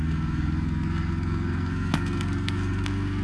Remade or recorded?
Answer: remade